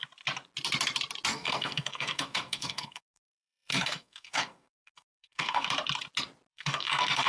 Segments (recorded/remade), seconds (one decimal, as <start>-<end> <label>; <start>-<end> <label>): 0.0-1.3 recorded; 1.3-5.7 remade; 5.7-6.5 recorded; 6.5-7.3 remade